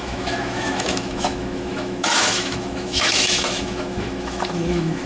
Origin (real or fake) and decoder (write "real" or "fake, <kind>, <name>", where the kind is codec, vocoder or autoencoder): fake, autoencoder, DAC-VAE